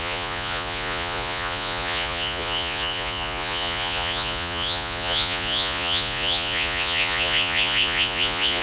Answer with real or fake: fake